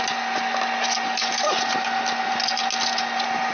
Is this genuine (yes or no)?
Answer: yes